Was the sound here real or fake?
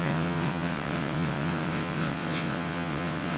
fake